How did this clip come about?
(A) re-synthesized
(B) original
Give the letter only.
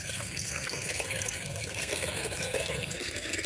A